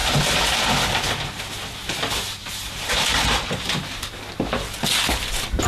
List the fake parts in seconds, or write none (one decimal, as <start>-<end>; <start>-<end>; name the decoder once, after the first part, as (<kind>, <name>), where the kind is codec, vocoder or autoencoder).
none